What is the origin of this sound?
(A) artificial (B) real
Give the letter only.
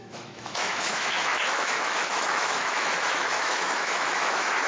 A